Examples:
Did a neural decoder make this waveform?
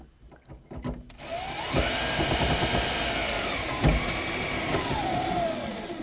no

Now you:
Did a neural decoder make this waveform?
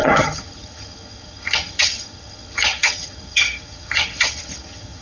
yes